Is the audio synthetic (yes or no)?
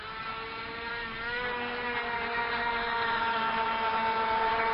no